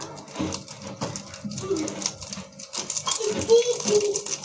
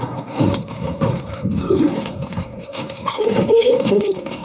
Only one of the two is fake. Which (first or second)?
second